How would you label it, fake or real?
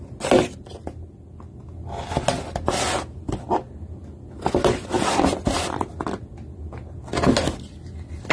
real